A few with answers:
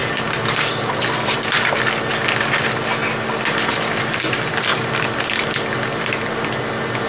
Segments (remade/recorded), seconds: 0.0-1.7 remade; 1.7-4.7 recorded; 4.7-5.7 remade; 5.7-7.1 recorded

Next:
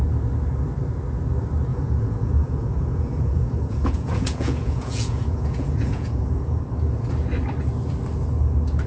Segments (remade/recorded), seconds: 0.0-1.7 recorded; 1.7-6.6 remade; 6.6-8.9 recorded

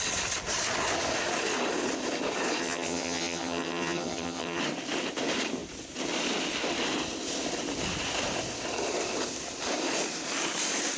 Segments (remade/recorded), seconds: 0.0-2.6 recorded; 2.6-4.6 remade; 4.6-11.0 recorded

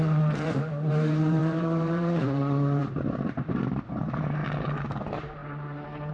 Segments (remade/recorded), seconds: 0.0-4.4 remade; 4.4-5.0 recorded; 5.0-6.1 remade

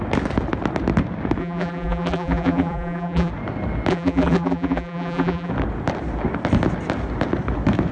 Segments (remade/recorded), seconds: 0.0-1.4 recorded; 1.4-3.3 remade; 3.3-3.9 recorded; 3.9-5.5 remade; 5.5-7.9 recorded